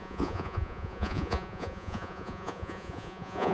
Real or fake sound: fake